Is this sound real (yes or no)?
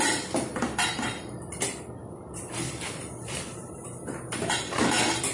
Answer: no